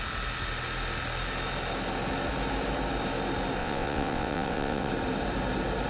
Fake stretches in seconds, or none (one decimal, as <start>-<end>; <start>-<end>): 3.6-4.9